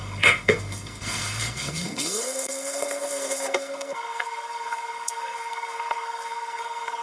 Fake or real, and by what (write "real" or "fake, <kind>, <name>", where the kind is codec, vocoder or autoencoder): fake, codec, SNAC